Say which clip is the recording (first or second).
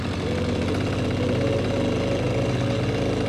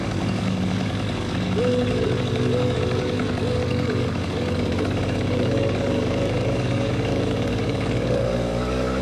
first